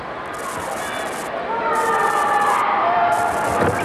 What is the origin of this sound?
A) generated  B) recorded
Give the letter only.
B